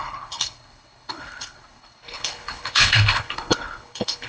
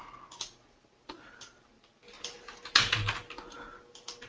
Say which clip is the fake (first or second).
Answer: first